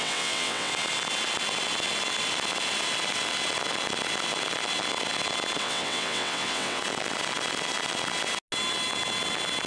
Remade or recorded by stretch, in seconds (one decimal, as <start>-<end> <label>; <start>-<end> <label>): 0.0-0.7 remade; 0.7-5.6 recorded; 5.6-6.8 remade; 6.8-9.7 recorded